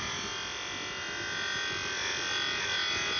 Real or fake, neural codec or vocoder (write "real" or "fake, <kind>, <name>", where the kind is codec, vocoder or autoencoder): real